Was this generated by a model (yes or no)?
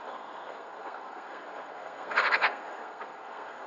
yes